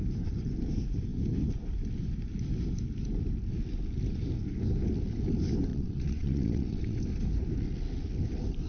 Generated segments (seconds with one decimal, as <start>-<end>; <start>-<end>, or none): 5.7-7.0